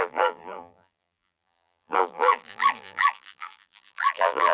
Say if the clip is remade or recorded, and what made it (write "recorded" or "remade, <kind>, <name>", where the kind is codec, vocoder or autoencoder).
remade, vocoder, BigVGAN v2